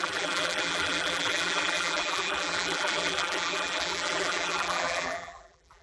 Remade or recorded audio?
remade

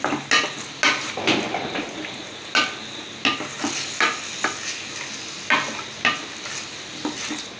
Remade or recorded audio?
recorded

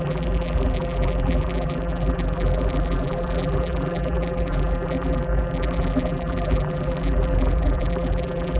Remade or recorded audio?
remade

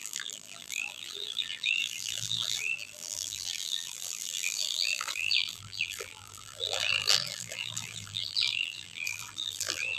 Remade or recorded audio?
remade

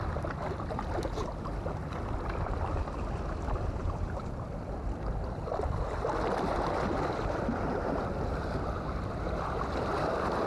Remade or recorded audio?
remade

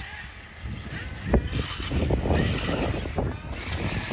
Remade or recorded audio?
recorded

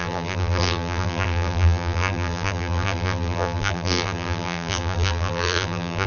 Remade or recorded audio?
remade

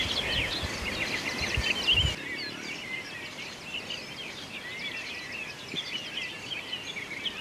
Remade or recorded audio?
recorded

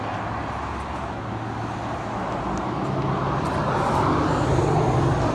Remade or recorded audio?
recorded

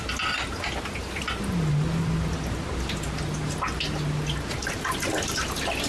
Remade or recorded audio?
recorded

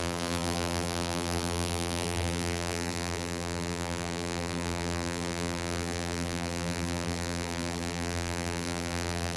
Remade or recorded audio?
remade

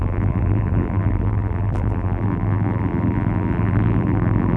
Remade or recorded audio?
remade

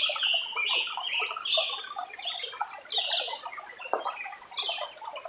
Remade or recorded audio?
recorded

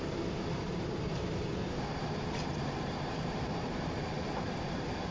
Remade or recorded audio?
remade